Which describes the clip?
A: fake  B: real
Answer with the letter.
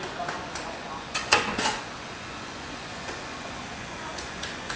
A